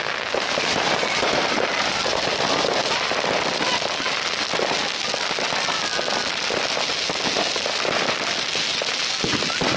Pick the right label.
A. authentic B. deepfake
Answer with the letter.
A